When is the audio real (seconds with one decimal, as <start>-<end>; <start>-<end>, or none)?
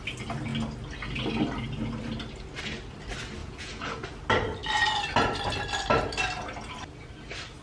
0.0-3.4; 4.0-7.6